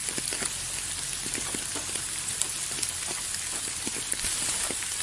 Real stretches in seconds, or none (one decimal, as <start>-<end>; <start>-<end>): 3.0-5.0

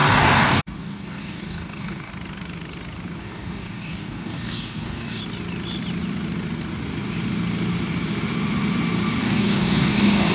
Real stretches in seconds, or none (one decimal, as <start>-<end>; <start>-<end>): 2.1-3.2; 5.2-9.2